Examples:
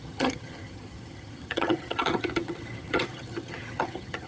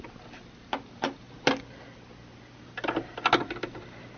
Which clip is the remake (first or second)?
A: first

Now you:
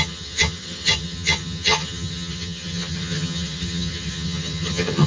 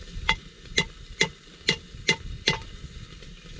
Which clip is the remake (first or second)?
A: first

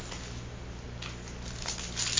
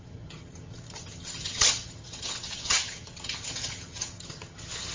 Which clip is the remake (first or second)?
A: second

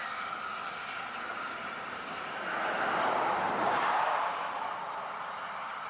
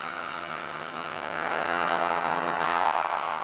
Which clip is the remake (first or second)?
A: second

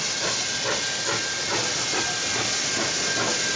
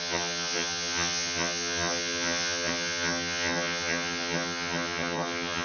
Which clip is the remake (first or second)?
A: second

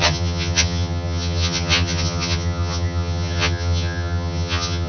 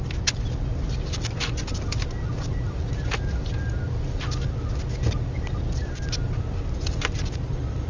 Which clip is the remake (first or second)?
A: first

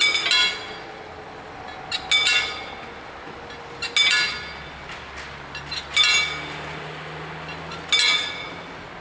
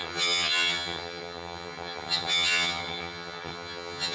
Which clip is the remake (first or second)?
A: second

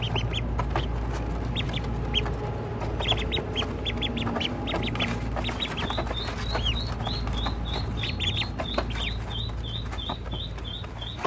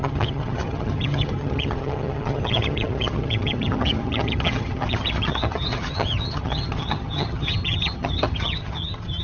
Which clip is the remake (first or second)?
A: second